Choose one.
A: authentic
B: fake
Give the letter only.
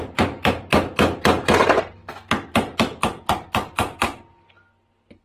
A